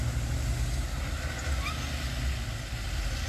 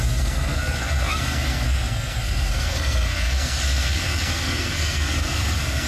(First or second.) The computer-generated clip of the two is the second